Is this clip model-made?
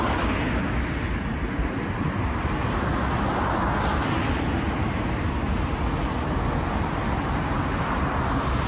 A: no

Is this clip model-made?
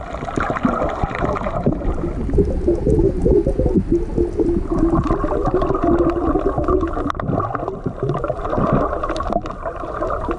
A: no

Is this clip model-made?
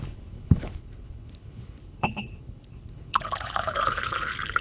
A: yes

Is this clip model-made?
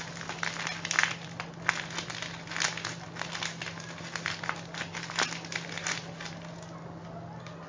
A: no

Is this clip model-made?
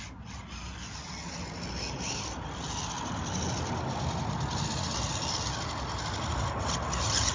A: no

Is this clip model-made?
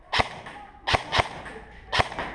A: no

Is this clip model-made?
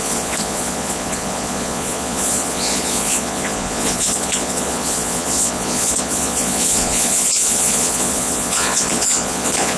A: yes